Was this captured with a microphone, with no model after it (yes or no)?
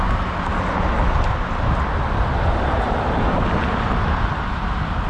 yes